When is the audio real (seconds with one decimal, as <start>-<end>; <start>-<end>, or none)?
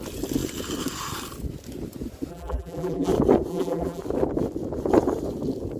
0.0-2.3; 3.1-3.5; 4.0-5.8